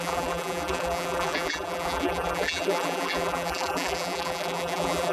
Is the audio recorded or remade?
remade